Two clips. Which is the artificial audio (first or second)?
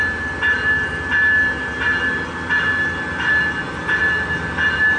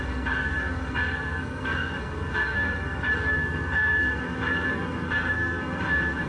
second